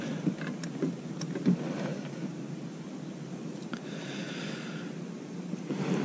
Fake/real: real